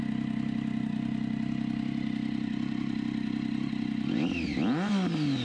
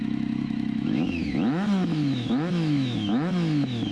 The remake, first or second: second